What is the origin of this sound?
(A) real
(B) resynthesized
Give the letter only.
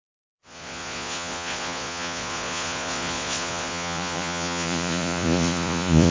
B